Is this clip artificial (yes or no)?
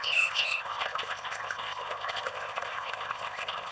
yes